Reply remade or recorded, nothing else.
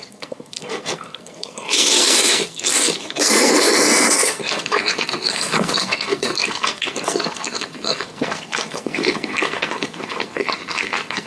remade